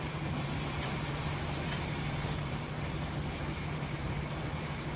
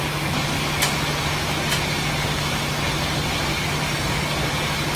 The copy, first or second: first